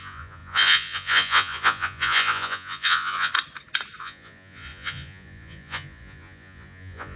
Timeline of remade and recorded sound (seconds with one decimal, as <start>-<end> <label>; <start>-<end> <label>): 0.0-3.3 remade; 3.3-4.0 recorded; 4.0-7.2 remade